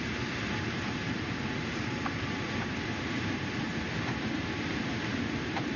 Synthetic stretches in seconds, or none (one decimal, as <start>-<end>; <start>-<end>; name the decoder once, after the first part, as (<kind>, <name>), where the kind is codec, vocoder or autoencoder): 0.0-3.7 (vocoder, BigVGAN v2); 5.0-5.8